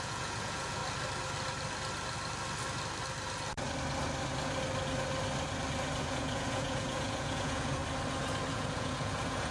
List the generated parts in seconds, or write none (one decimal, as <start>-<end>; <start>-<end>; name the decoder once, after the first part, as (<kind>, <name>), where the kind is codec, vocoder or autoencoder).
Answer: 0.0-0.8 (vocoder, Vocos); 6.0-7.8; 8.5-9.5